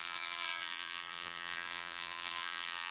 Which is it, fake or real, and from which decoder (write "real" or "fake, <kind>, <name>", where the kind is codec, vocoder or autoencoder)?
fake, vocoder, BigVGAN v2